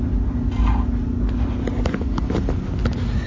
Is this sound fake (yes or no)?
no